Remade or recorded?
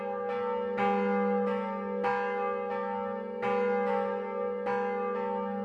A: recorded